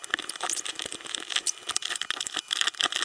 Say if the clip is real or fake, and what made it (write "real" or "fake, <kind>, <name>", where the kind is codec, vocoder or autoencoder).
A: real